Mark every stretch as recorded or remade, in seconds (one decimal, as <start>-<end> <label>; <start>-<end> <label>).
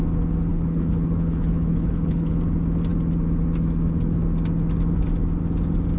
0.0-0.5 recorded; 0.5-2.3 remade; 2.3-6.0 recorded